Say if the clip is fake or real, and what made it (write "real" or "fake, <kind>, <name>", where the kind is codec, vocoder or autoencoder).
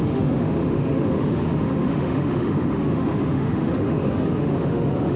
fake, autoencoder, DAC-VAE